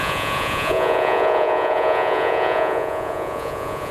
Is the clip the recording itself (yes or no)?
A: no